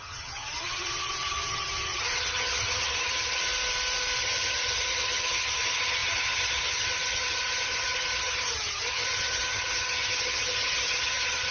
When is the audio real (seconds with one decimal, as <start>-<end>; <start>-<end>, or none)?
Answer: 3.5-4.2